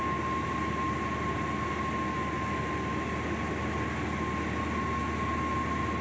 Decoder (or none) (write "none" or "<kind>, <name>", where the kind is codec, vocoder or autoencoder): none